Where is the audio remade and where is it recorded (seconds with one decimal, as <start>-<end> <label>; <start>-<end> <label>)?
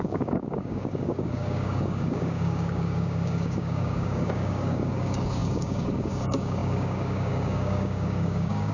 0.0-8.7 remade